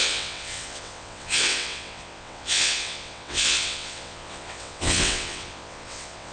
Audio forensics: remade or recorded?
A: remade